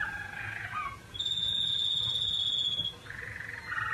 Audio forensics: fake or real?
fake